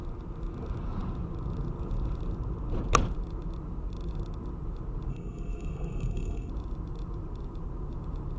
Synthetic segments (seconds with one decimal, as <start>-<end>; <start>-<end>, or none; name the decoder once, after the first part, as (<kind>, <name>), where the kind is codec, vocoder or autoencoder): 5.1-6.5 (codec, SNAC)